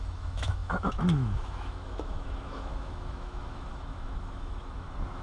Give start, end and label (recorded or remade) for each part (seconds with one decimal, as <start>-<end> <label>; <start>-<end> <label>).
0.0-5.2 remade